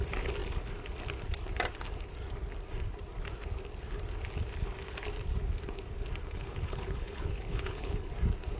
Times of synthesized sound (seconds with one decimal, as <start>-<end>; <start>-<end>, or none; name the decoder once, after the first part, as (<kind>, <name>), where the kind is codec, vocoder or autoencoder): 6.2-8.1 (codec, HILCodec)